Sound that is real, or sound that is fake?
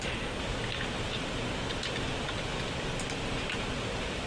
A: real